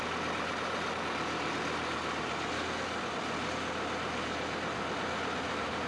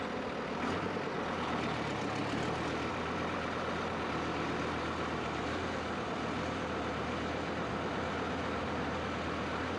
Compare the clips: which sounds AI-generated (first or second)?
second